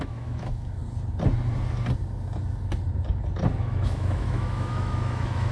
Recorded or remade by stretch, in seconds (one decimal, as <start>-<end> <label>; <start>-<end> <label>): 0.0-0.8 remade; 0.8-3.6 recorded; 3.6-5.5 remade